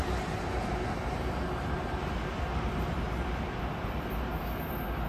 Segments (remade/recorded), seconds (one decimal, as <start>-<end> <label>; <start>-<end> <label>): 0.0-5.1 recorded